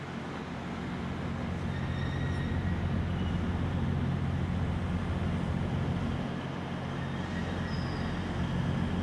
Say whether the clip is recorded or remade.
recorded